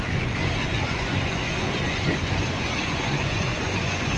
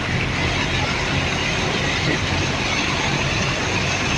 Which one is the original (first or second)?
second